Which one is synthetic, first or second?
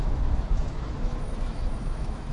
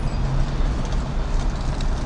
first